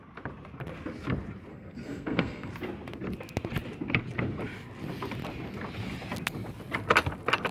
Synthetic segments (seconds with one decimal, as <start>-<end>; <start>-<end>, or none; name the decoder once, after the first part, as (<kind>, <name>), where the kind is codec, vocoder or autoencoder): 1.5-2.5 (codec, SNAC)